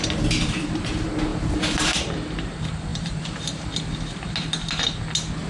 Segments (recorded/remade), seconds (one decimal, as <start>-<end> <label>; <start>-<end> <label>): 0.0-2.9 recorded; 2.9-3.6 remade; 3.6-5.5 recorded